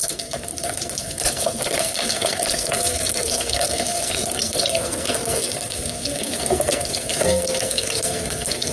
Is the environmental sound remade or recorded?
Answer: remade